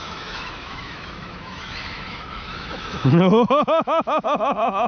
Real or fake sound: fake